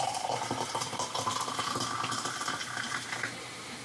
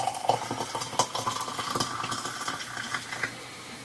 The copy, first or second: first